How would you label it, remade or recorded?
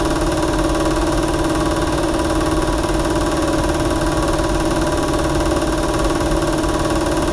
recorded